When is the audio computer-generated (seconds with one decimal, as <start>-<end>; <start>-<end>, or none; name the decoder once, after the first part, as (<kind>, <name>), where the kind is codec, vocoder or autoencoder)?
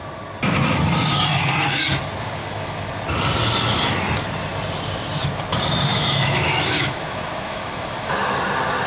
2.4-2.9 (autoencoder, DAC-VAE); 5.9-8.3